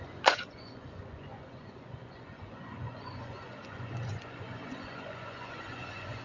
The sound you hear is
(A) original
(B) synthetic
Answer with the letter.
B